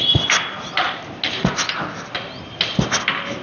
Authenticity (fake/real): real